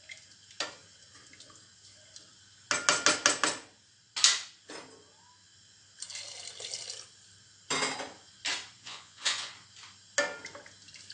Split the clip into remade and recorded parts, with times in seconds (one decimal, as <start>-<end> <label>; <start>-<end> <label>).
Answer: 0.0-8.8 recorded; 8.8-9.5 remade; 9.5-11.1 recorded